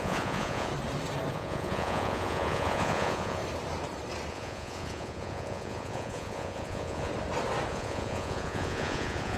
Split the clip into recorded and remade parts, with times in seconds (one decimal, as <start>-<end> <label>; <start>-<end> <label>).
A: 0.0-0.7 remade; 0.7-1.3 recorded; 1.3-3.4 remade; 3.4-4.3 recorded; 4.3-7.1 remade; 7.1-7.7 recorded; 7.7-9.4 remade